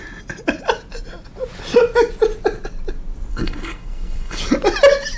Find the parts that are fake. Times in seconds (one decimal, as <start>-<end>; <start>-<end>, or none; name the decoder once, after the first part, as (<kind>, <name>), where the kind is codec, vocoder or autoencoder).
3.3-4.4 (codec, SNAC)